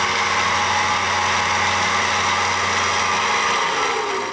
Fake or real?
real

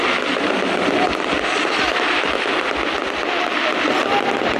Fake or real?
real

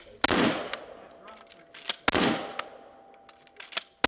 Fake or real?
real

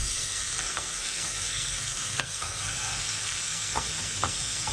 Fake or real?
fake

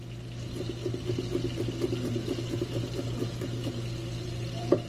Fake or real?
real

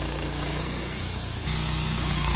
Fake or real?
fake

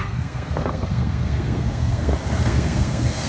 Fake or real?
fake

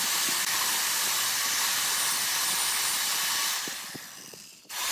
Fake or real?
real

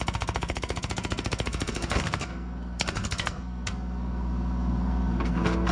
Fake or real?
fake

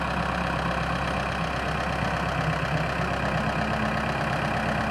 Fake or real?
real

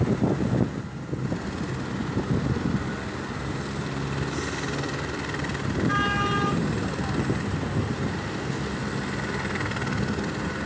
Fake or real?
real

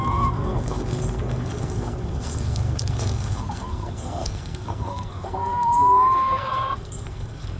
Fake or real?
fake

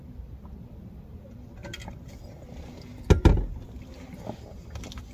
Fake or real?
real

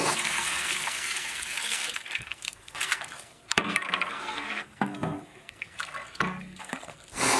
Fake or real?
fake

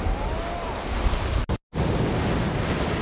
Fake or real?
real